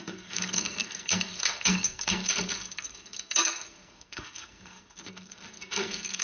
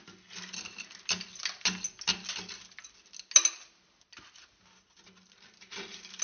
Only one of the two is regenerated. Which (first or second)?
first